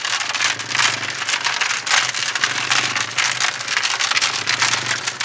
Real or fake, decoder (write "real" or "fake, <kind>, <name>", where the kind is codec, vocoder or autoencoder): real